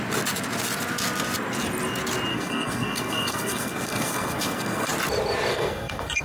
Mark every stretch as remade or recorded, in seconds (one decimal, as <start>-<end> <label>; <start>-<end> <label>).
0.0-2.3 recorded; 2.3-4.9 remade; 4.9-5.5 recorded; 5.5-6.2 remade